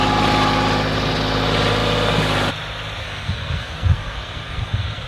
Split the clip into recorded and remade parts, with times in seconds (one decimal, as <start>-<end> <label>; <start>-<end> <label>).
0.0-3.0 recorded; 3.0-5.1 remade